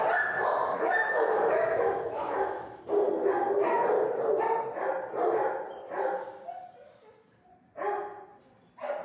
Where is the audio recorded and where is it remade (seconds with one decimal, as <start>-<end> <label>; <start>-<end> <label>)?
0.0-0.7 recorded; 0.7-2.8 remade; 2.8-9.0 recorded